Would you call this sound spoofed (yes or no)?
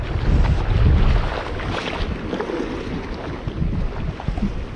no